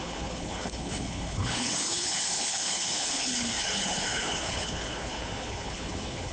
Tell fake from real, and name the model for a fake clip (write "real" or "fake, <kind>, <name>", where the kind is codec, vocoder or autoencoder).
fake, codec, HILCodec